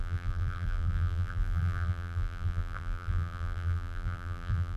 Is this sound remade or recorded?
remade